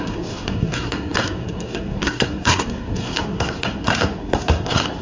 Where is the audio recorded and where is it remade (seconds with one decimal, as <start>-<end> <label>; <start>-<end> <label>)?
0.0-5.0 remade